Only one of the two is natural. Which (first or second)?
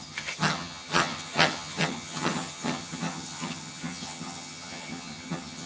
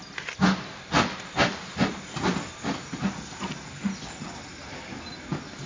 second